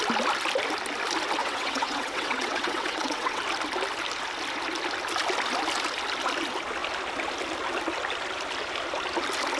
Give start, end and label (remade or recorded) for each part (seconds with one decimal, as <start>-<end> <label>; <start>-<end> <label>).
0.0-1.4 recorded; 1.4-3.4 remade; 3.4-9.6 recorded